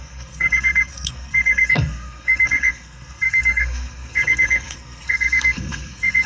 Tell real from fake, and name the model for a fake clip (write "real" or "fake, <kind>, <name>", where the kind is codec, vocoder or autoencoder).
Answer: fake, codec, SNAC